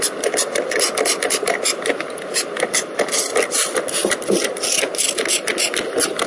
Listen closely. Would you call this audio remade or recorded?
recorded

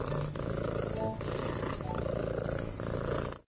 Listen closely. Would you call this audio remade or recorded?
recorded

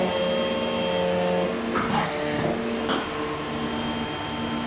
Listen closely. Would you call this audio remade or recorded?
recorded